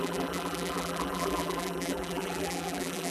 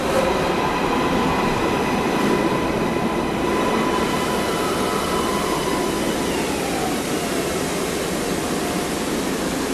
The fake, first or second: first